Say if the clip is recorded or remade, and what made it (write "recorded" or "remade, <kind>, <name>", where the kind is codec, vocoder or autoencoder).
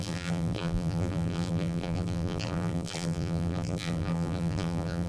remade, vocoder, BigVGAN v2